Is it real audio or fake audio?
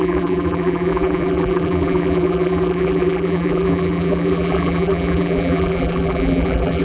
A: fake